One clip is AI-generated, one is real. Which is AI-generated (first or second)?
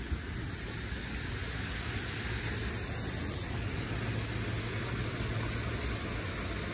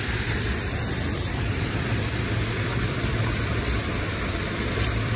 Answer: second